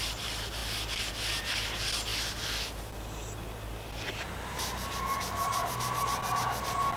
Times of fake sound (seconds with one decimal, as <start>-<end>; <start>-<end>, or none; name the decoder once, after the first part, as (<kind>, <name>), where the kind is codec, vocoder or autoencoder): none